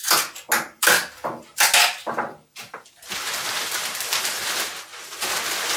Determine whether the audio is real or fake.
real